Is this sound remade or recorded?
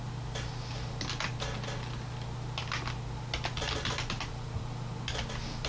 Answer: recorded